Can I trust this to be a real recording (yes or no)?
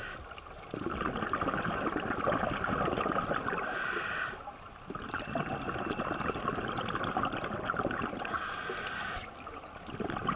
yes